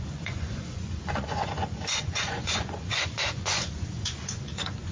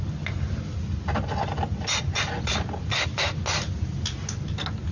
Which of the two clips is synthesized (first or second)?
first